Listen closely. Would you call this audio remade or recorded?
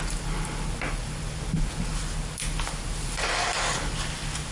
recorded